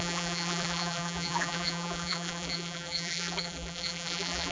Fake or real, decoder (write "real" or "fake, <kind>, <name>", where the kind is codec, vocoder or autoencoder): fake, vocoder, BigVGAN v2